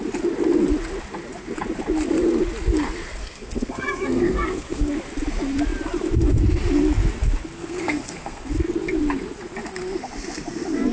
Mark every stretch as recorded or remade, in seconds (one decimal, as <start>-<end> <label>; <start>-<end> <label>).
0.0-3.2 recorded; 3.2-4.9 remade; 4.9-7.6 recorded; 7.6-8.5 remade; 8.5-10.9 recorded